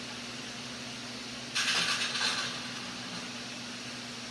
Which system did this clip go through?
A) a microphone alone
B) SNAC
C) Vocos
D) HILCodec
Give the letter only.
A